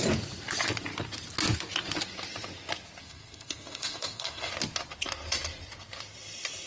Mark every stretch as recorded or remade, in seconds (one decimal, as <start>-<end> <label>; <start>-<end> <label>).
0.0-3.0 recorded; 3.0-4.5 remade; 4.5-6.7 recorded